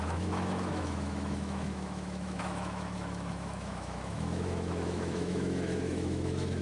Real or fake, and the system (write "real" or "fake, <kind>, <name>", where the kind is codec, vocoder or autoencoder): fake, autoencoder, DAC-VAE